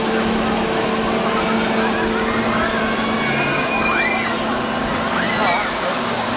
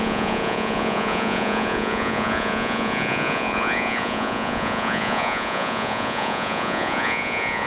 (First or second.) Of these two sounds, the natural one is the first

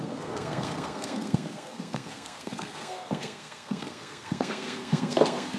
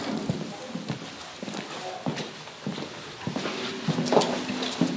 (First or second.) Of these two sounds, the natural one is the second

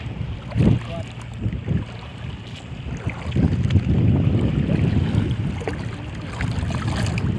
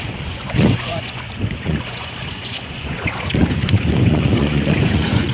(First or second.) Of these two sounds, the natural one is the first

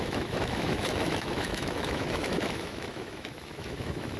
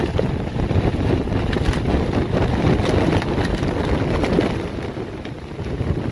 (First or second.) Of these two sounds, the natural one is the second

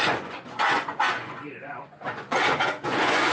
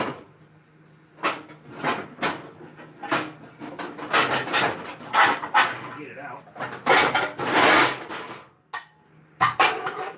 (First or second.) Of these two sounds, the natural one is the second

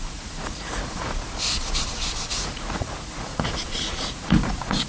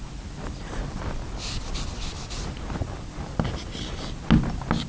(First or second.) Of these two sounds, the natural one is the second